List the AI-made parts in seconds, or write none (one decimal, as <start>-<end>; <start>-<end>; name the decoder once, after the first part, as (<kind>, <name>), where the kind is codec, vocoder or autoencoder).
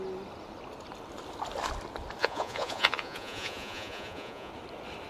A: 2.2-4.5 (vocoder, Vocos)